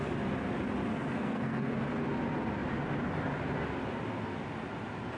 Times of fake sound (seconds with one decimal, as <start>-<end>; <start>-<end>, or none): 0.9-1.7